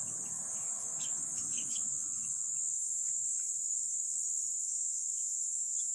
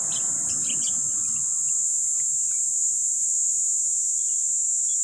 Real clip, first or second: second